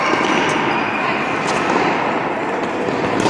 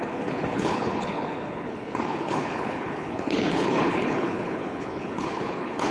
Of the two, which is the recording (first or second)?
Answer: first